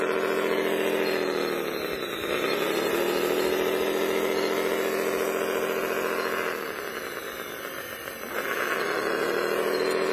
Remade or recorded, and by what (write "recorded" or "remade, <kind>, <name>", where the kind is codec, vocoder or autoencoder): recorded